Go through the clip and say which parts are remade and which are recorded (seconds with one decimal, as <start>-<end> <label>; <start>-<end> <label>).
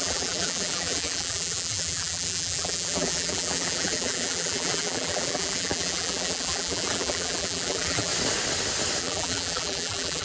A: 0.0-8.1 remade; 8.1-9.0 recorded; 9.0-10.2 remade